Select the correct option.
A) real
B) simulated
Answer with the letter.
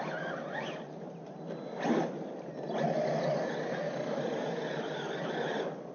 A